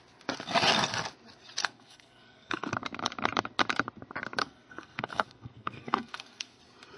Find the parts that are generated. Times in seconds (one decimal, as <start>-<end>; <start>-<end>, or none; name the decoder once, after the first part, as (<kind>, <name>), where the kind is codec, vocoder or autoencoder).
1.6-2.7 (codec, SNAC); 4.4-6.6